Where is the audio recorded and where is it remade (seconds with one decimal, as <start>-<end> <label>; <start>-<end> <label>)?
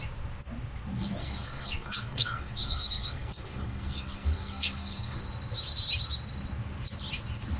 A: 0.0-1.2 recorded; 1.2-5.2 remade; 5.2-7.6 recorded